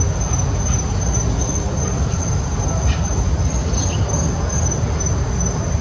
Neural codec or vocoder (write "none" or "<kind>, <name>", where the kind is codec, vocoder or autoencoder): none